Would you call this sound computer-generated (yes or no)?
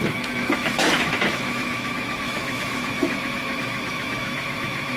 yes